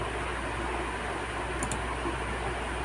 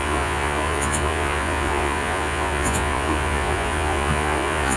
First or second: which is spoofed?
second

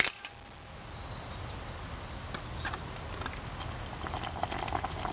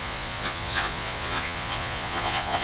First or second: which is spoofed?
second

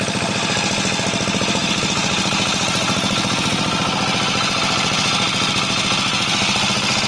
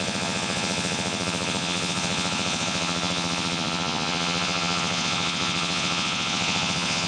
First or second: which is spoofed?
second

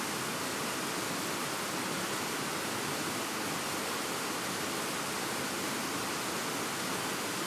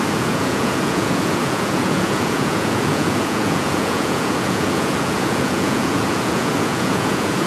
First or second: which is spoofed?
second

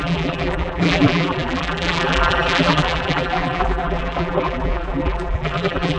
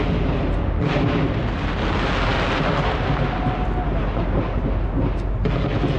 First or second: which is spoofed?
first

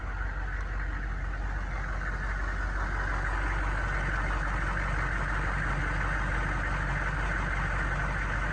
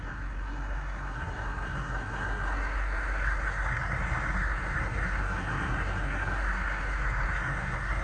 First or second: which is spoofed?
second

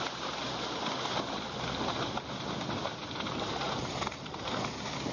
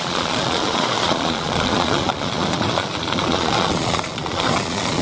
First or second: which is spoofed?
second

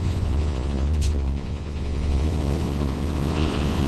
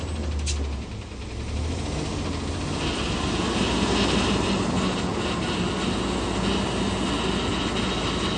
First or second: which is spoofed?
first